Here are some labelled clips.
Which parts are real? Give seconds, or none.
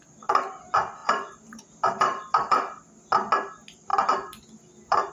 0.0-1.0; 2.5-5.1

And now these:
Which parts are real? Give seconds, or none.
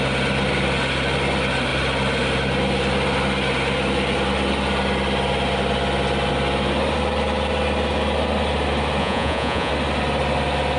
0.0-9.0; 9.7-10.8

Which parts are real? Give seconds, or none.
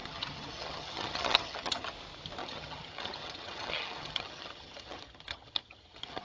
1.9-2.4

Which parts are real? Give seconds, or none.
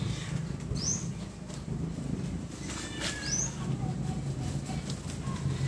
0.0-5.7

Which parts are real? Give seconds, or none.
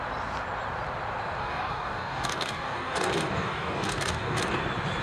0.0-1.4; 4.4-5.0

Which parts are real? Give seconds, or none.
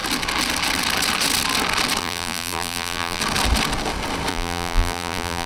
0.0-2.0; 3.2-4.3